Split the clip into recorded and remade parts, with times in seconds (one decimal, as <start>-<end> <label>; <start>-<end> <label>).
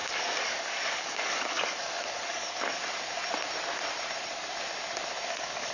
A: 0.0-2.8 remade; 2.8-5.3 recorded; 5.3-5.7 remade